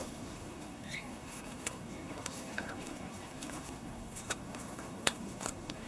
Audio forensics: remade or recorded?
remade